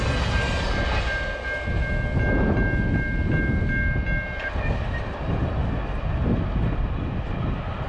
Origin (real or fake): real